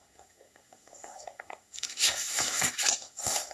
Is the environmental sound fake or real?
fake